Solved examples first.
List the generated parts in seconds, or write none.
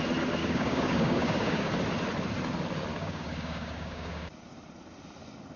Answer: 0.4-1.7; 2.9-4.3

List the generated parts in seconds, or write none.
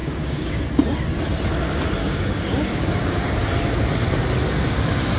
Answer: 0.0-0.6; 2.0-3.4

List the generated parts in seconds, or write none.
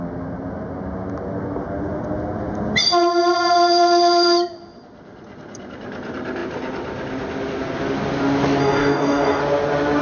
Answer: 8.6-9.4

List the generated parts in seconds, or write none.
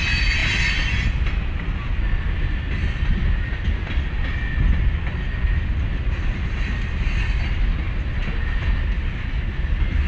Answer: none